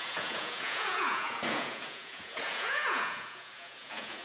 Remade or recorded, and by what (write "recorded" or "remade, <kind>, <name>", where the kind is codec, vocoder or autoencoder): remade, vocoder, Vocos